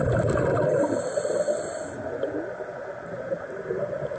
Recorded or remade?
recorded